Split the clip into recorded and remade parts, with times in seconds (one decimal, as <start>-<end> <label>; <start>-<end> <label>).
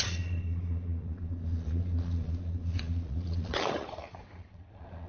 0.0-5.1 remade